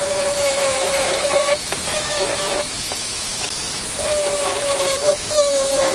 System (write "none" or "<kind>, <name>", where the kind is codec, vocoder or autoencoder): autoencoder, DAC-VAE